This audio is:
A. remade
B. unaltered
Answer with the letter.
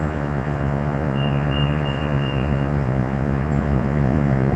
A